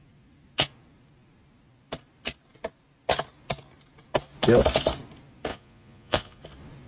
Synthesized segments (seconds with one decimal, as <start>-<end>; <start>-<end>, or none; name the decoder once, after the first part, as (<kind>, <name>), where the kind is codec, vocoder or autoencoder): 5.5-6.4 (vocoder, Vocos)